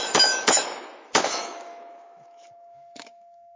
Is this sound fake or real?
fake